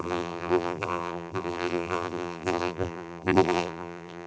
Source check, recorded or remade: remade